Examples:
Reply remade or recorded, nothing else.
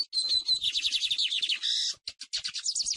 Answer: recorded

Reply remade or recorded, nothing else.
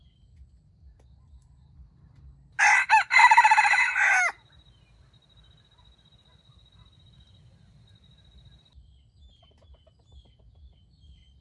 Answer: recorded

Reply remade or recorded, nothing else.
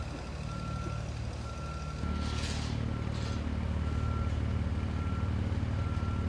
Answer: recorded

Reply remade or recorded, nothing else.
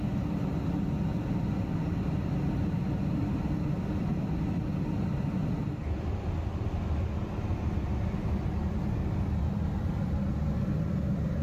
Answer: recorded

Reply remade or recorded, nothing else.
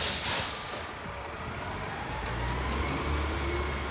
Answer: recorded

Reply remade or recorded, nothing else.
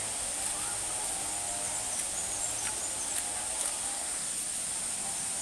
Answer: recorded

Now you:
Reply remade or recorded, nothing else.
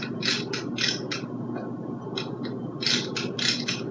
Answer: recorded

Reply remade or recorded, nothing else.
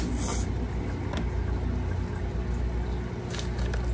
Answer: recorded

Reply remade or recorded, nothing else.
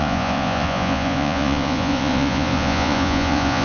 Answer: remade